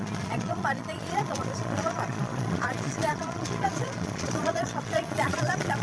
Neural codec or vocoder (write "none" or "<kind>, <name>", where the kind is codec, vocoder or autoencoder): vocoder, Vocos